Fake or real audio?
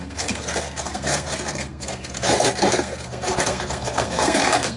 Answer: fake